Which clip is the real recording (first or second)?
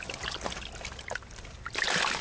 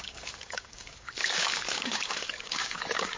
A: first